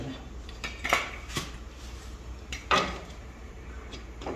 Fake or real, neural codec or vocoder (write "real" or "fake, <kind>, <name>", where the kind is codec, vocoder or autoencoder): fake, vocoder, BigVGAN v2